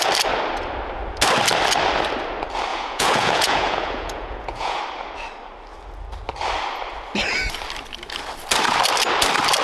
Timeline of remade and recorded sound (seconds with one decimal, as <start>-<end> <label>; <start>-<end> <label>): 0.0-2.7 recorded; 2.7-4.8 remade; 4.8-9.6 recorded